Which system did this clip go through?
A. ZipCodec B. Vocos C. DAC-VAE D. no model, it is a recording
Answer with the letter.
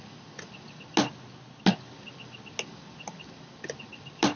D